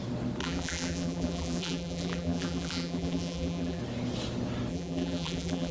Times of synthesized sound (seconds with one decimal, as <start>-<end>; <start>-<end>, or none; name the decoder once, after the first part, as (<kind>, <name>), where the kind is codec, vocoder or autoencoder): 0.4-3.8 (vocoder, BigVGAN v2); 4.7-5.7